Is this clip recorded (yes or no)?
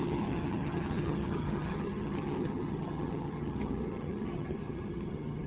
no